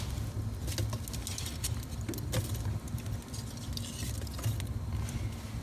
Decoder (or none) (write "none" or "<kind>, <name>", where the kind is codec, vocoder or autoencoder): none